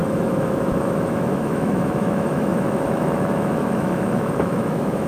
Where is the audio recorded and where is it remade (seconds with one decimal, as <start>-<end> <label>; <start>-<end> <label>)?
0.0-5.1 remade